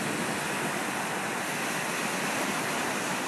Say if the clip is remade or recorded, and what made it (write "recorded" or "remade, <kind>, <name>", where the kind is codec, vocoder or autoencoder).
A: recorded